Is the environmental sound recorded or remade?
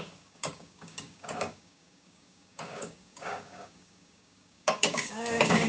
remade